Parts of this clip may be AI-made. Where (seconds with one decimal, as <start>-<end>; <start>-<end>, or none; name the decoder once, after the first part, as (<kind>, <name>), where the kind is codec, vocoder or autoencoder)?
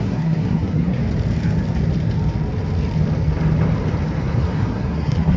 0.0-1.0 (codec, SNAC); 4.2-5.4